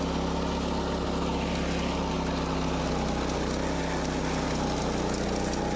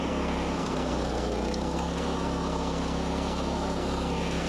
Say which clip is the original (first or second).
first